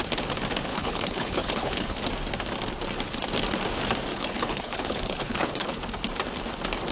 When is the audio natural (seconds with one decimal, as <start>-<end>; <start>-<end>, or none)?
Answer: 0.0-0.7; 2.0-4.1; 5.8-6.9